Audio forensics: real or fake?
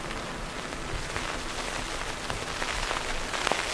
real